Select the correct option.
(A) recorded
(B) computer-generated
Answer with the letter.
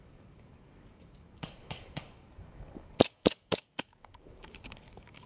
B